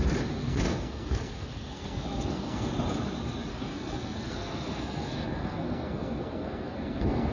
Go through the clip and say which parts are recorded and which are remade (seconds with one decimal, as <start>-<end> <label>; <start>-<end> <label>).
0.0-0.4 recorded; 0.4-2.7 remade; 2.7-3.5 recorded; 3.5-7.3 remade